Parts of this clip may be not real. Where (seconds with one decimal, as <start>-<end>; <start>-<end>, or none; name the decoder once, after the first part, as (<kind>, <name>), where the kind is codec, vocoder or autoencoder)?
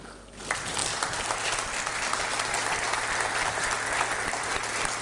none